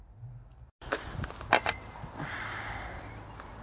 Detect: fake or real real